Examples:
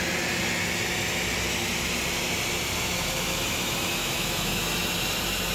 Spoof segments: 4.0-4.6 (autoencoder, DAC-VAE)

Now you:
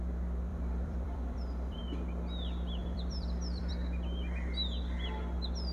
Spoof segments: 0.5-1.8 (vocoder, BigVGAN v2); 2.8-3.7

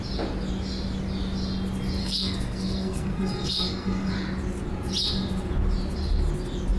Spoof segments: 2.0-4.1 (codec, SNAC)

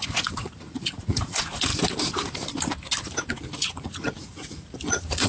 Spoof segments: 0.0-1.7 (vocoder, Vocos); 3.5-5.3

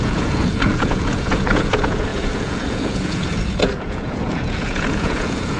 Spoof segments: 0.0-5.6 (vocoder, Vocos)

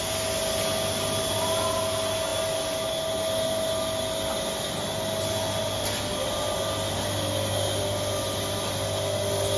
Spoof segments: none

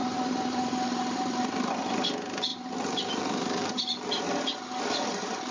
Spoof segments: 0.0-1.7 (vocoder, BigVGAN v2); 2.5-4.6

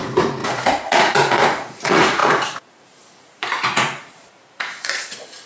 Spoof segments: 0.0-5.5 (vocoder, Vocos)